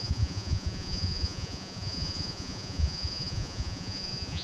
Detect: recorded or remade remade